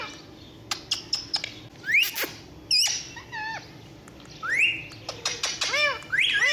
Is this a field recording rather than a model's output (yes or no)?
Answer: yes